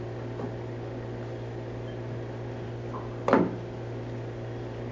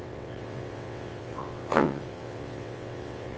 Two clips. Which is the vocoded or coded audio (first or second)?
second